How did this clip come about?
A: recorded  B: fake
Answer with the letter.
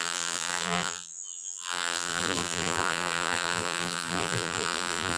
B